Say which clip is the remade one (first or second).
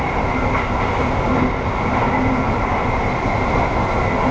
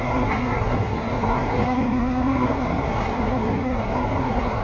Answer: second